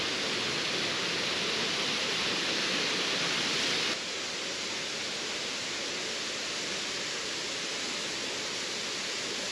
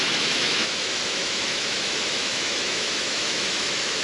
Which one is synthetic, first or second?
second